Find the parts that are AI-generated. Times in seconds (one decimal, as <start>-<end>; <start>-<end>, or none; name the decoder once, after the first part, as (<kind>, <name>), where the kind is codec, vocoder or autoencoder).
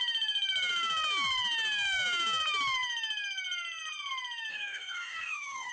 4.5-5.7 (codec, DAC)